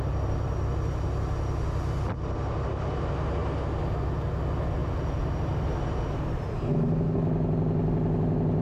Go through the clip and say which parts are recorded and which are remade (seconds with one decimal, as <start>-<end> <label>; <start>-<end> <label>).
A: 0.0-8.6 recorded